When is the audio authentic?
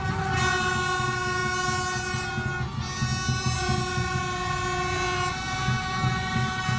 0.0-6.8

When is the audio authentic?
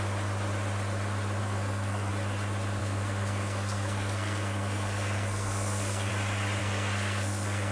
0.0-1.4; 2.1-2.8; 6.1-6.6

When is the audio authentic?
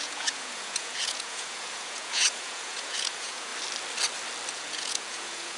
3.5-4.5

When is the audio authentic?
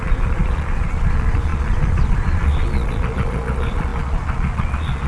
none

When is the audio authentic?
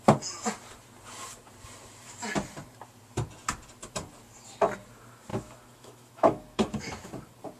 0.0-5.3; 7.1-7.6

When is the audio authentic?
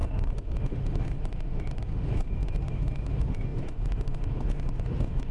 none